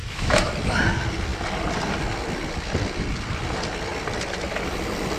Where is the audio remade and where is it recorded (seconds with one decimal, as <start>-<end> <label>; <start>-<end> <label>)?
0.0-0.5 remade; 0.5-5.2 recorded